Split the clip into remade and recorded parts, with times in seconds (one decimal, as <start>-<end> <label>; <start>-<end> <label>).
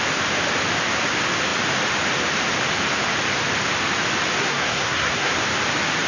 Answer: 0.0-4.4 recorded; 4.4-5.3 remade; 5.3-6.1 recorded